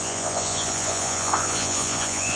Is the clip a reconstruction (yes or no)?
yes